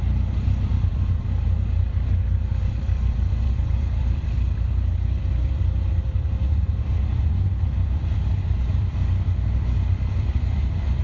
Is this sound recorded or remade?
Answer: remade